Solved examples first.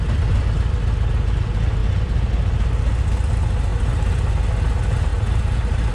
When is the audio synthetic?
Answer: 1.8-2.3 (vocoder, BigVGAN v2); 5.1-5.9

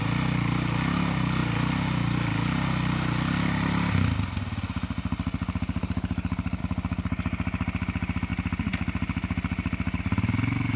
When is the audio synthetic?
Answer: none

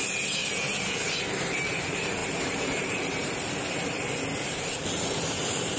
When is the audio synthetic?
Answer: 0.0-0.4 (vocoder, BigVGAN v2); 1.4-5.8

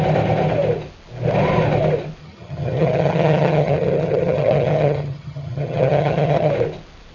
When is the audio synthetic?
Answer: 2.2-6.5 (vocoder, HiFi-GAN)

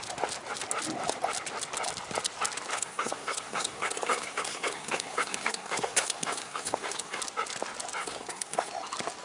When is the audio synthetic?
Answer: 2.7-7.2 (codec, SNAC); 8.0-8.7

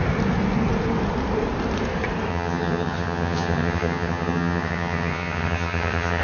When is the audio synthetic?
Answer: 2.3-6.2 (vocoder, HiFi-GAN)